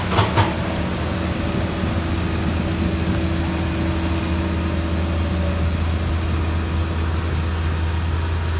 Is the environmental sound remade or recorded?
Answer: recorded